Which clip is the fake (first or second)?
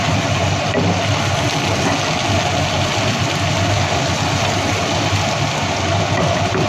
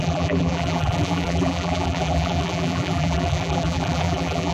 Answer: second